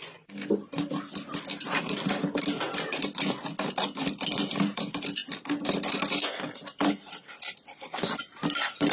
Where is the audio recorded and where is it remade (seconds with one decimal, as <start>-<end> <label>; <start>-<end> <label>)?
0.0-4.3 recorded; 4.3-5.2 remade; 5.2-6.0 recorded; 6.0-8.9 remade